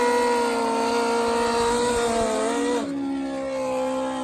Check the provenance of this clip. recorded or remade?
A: recorded